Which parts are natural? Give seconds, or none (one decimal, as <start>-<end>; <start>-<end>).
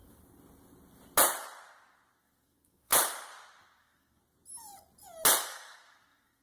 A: 0.0-2.2; 2.9-3.8; 4.2-5.4